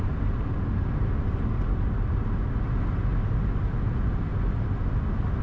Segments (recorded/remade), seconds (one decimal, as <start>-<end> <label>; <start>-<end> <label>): 0.0-5.4 recorded